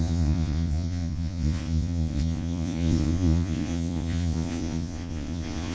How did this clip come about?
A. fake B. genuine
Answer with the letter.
A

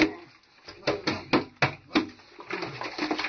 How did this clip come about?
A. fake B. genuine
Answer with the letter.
B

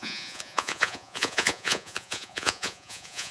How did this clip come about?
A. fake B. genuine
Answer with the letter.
A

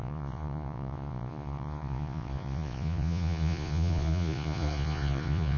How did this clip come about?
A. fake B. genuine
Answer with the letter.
A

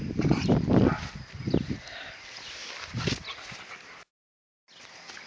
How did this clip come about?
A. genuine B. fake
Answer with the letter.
A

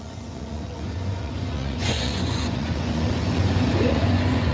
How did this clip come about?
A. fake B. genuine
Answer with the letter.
A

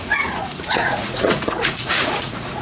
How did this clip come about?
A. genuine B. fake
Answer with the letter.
B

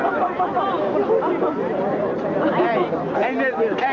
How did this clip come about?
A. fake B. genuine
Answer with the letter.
B